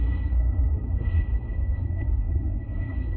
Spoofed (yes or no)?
yes